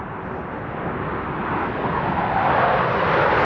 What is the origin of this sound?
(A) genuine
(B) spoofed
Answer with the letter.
A